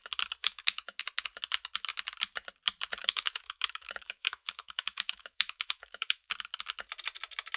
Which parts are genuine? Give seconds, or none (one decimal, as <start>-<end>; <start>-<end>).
0.0-0.4; 1.0-3.0; 6.3-7.6